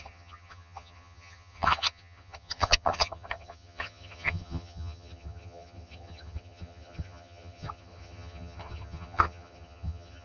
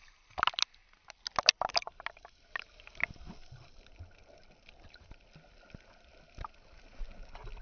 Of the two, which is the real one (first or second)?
second